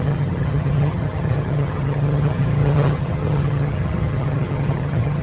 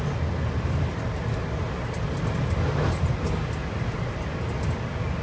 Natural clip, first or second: second